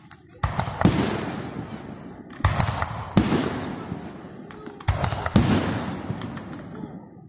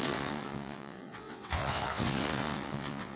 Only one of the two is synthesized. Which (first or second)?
second